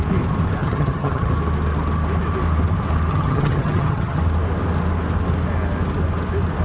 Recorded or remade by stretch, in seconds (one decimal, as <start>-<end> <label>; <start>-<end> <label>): 0.0-0.6 recorded; 0.6-1.3 remade; 1.3-3.1 recorded; 3.1-4.2 remade; 4.2-6.6 recorded